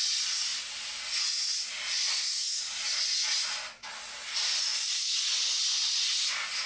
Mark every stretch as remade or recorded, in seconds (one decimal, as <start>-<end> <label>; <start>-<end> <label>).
0.0-2.1 recorded; 2.1-2.6 remade; 2.6-6.7 recorded